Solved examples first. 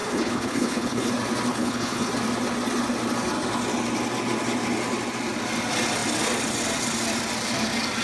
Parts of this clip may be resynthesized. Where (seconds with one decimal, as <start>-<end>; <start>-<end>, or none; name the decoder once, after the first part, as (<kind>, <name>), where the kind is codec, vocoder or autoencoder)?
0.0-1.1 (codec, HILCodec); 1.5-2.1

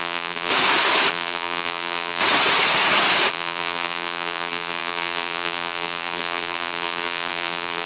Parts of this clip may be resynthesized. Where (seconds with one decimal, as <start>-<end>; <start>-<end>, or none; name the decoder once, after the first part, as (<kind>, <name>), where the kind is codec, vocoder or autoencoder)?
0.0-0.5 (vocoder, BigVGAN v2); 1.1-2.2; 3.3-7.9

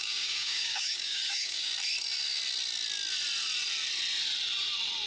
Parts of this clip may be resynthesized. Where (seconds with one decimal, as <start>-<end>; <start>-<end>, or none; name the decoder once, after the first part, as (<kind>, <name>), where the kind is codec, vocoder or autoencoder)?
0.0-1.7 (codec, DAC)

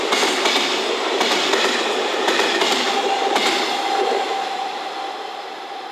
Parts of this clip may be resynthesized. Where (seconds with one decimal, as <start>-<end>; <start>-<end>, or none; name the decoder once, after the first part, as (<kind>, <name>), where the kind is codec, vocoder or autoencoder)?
none